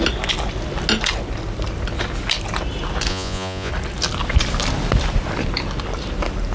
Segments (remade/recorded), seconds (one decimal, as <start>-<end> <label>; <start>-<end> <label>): 0.0-3.1 recorded; 3.1-3.7 remade; 3.7-6.5 recorded